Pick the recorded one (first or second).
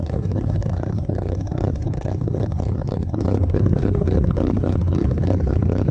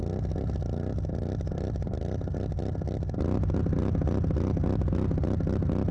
second